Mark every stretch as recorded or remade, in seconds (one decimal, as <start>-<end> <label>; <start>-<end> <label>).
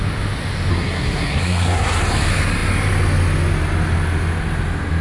0.0-0.7 recorded; 0.7-2.0 remade; 2.0-5.0 recorded